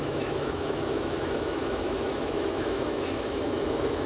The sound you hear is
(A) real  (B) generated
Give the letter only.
B